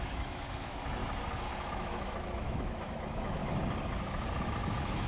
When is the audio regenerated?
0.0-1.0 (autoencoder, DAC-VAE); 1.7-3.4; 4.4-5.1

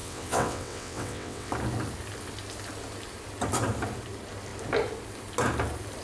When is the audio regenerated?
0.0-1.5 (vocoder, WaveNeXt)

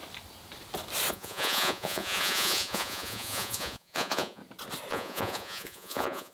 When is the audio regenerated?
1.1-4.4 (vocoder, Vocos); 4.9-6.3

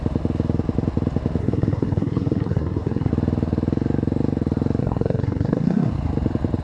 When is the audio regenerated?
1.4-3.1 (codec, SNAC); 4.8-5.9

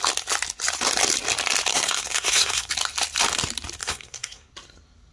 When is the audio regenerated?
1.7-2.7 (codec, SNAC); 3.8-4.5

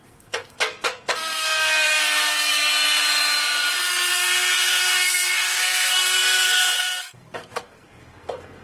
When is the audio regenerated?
0.0-2.7 (codec, SNAC); 4.1-8.6

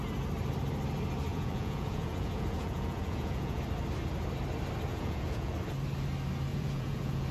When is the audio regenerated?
1.3-3.6 (vocoder, Vocos); 4.9-5.5; 6.5-7.3